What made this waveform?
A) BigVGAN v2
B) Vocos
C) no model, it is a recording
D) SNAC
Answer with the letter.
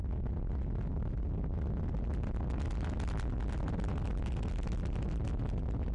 C